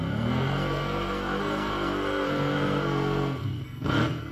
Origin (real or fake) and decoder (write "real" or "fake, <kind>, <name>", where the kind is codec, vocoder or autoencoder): fake, codec, SNAC